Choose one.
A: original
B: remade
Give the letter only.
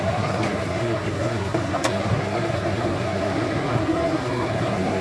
B